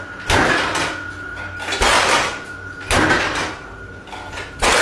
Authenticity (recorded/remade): recorded